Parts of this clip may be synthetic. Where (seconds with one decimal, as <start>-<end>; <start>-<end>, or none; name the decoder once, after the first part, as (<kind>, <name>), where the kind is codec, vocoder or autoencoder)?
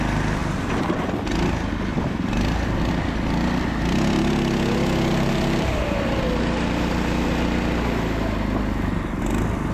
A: 5.1-5.7 (vocoder, BigVGAN v2)